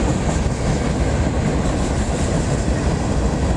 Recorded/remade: recorded